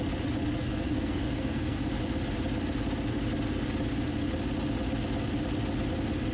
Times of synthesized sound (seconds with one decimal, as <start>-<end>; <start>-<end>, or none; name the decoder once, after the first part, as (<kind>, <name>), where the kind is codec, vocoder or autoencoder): 0.6-1.9 (codec, SNAC)